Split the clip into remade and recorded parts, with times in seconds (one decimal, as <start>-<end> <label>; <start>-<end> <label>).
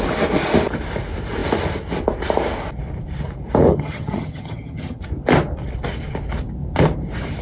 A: 0.0-3.7 recorded; 3.7-5.0 remade; 5.0-7.4 recorded